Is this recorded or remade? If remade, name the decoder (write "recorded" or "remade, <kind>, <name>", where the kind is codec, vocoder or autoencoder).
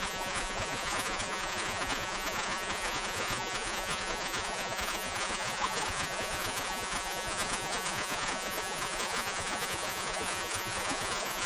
remade, vocoder, Vocos